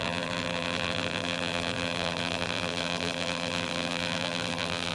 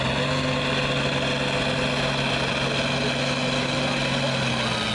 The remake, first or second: first